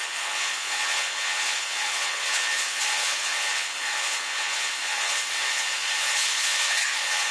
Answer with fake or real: fake